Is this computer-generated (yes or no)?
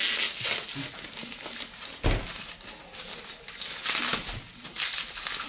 no